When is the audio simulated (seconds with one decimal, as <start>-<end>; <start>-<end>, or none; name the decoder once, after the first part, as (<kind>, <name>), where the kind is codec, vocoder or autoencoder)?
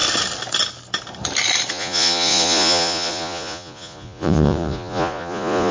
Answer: 1.7-5.7 (vocoder, Vocos)